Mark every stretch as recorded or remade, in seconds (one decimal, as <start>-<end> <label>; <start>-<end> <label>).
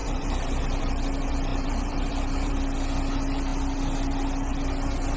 0.0-0.8 remade; 0.8-1.5 recorded; 1.5-2.5 remade; 2.5-5.2 recorded